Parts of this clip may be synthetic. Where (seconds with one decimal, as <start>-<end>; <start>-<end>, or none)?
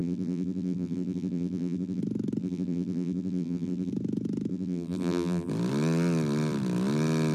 0.0-2.0; 2.4-3.9; 4.5-5.5